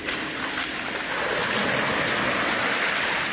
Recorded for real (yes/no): yes